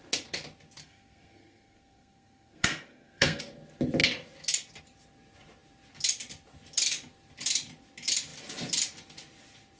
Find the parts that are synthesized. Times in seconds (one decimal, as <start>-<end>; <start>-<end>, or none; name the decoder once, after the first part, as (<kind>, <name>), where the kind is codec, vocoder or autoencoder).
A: 0.8-3.4 (codec, SNAC)